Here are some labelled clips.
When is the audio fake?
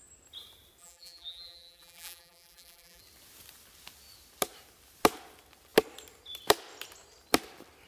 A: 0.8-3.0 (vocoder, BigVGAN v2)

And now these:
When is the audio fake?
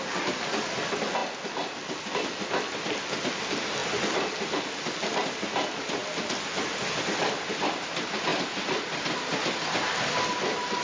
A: none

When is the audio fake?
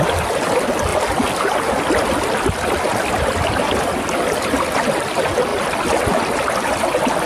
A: 5.5-7.3 (vocoder, BigVGAN v2)